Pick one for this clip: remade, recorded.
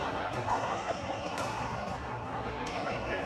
remade